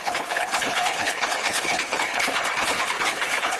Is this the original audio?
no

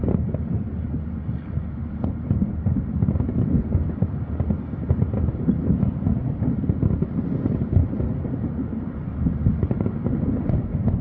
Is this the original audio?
yes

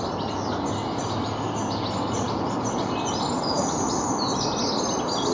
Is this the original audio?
yes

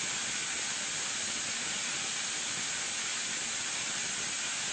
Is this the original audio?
yes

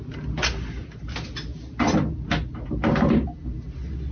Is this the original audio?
yes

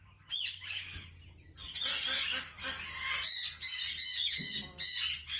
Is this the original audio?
yes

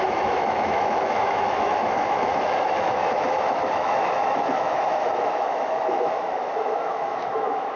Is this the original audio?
no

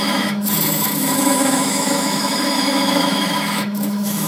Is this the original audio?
no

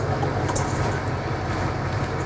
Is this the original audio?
yes